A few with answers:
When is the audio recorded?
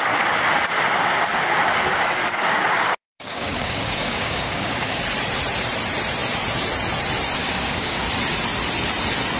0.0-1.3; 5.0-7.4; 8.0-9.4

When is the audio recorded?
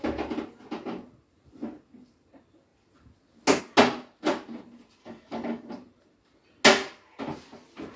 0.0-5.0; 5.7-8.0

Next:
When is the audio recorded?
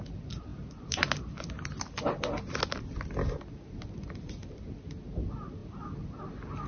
0.0-6.7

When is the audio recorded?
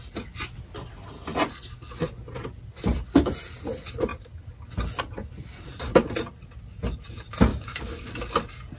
0.0-7.5; 8.1-8.8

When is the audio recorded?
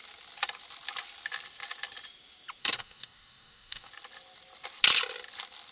0.0-2.6; 3.9-5.7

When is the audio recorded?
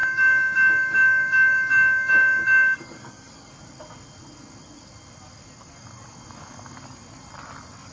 3.5-7.9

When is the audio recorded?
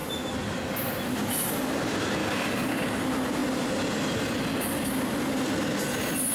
0.0-2.2; 3.0-6.3